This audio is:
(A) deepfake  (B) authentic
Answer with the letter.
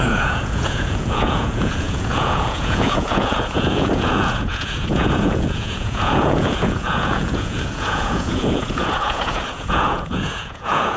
A